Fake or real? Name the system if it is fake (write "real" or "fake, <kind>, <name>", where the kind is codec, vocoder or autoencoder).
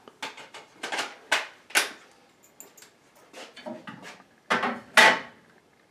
real